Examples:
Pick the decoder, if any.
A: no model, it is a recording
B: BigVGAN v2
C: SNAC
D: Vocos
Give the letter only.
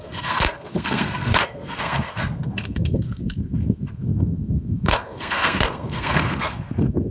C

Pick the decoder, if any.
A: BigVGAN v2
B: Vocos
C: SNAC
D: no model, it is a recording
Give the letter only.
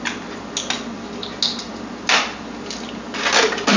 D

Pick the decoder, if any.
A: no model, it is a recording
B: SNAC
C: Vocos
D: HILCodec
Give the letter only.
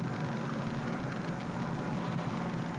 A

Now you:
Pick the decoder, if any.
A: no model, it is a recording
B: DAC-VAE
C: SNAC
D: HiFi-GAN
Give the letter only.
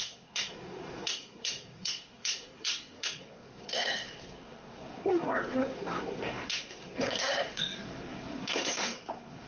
C